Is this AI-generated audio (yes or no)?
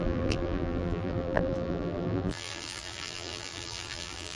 yes